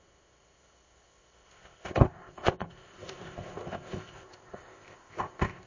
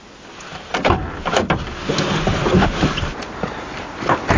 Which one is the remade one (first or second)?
first